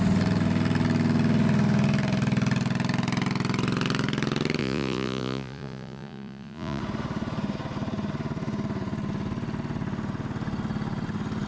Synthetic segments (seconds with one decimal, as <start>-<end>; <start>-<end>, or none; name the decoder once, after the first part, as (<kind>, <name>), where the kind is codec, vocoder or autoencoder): 4.6-6.8 (vocoder, Vocos)